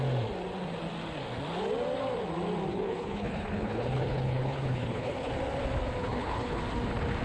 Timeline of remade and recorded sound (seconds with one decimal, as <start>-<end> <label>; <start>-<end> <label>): 0.0-2.7 recorded; 2.7-5.3 remade; 5.3-6.0 recorded; 6.0-6.6 remade; 6.6-7.2 recorded